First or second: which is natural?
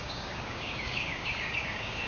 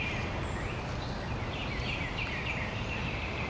second